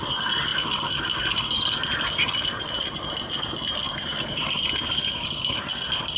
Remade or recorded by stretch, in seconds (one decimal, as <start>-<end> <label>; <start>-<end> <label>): 0.0-6.2 recorded